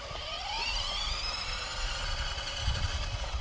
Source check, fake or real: real